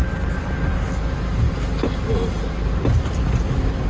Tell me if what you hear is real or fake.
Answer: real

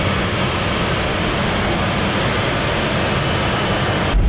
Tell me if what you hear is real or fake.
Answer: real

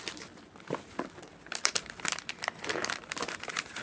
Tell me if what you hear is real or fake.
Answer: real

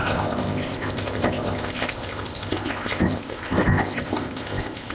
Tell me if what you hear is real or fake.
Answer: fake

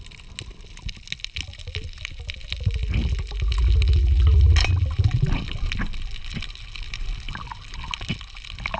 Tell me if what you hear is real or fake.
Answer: real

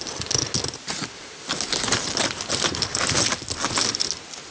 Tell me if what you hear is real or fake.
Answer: real